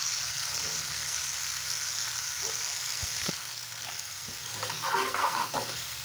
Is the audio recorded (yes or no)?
no